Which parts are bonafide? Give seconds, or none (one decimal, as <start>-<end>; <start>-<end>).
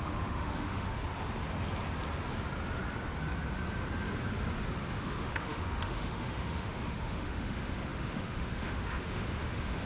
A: 1.0-4.9